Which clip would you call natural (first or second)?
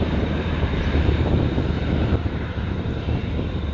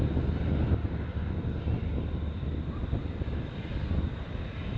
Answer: second